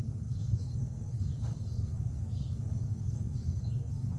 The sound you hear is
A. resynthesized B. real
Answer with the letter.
A